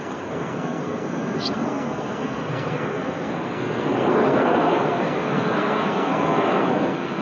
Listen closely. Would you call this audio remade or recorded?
remade